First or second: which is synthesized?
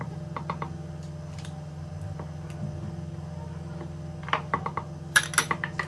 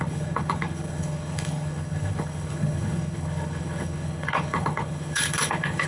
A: second